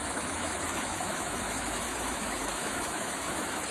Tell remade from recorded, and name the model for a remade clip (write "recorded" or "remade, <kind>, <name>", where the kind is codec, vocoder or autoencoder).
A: remade, autoencoder, DAC-VAE